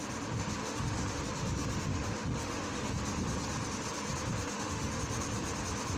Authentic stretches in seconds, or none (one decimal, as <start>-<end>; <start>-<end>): 0.0-0.6; 1.2-1.9; 2.9-4.4; 5.0-6.0